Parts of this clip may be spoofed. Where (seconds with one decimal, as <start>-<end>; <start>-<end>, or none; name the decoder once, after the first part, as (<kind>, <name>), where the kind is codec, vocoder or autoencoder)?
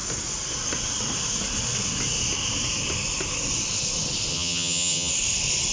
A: 4.3-5.1 (vocoder, HiFi-GAN)